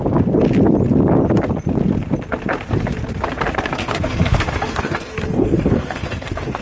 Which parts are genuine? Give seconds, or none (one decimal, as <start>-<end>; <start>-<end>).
0.0-3.8